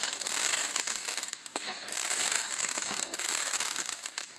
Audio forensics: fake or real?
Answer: fake